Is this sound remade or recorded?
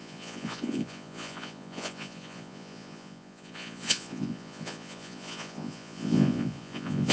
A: remade